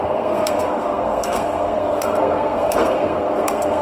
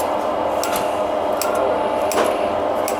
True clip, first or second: second